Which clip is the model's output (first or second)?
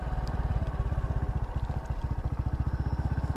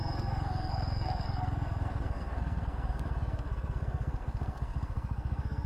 second